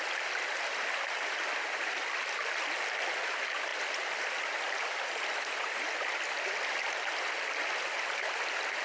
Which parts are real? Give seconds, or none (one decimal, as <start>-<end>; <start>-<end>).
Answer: 0.0-8.8